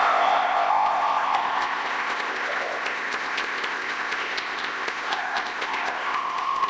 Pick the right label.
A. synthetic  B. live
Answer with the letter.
A